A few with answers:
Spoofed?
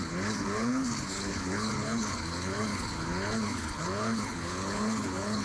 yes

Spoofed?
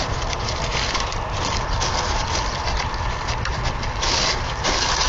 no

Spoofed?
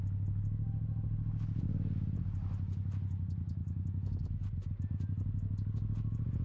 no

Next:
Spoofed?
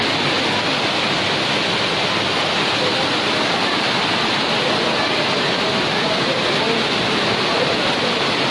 no